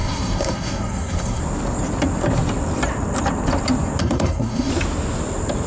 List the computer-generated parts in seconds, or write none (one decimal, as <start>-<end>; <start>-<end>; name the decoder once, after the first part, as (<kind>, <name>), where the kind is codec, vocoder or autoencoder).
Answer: 0.0-1.4 (codec, SNAC); 4.0-4.7